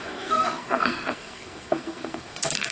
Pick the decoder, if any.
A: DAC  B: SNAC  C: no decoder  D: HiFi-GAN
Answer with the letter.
B